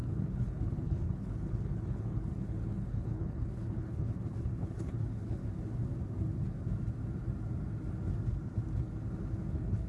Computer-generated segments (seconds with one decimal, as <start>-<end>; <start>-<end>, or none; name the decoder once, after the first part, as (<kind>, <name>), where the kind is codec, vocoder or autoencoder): 0.0-5.4 (codec, HILCodec); 9.5-9.9